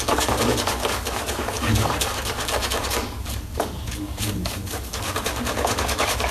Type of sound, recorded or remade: remade